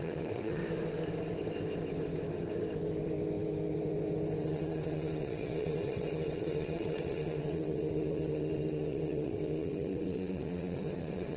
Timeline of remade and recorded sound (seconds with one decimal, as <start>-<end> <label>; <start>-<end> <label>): 0.0-0.6 remade; 0.6-4.4 recorded; 4.4-11.4 remade